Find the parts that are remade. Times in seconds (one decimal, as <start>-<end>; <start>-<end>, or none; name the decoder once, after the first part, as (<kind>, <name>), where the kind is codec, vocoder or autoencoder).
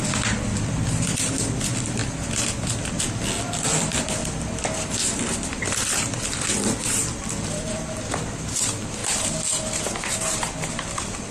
0.0-2.0 (vocoder, BigVGAN v2); 2.8-4.2; 5.6-9.0; 10.3-11.3